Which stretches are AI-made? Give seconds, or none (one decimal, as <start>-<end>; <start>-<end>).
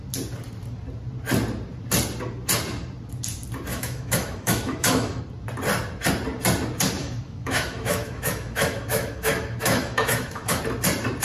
3.7-5.2; 7.0-10.6